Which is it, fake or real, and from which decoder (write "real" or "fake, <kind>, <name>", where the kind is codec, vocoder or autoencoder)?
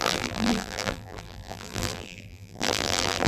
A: fake, vocoder, BigVGAN v2